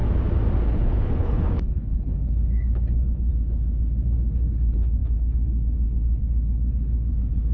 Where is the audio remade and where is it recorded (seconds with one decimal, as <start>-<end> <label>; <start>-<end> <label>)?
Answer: 0.0-0.7 recorded; 0.7-3.3 remade; 3.3-4.3 recorded; 4.3-7.5 remade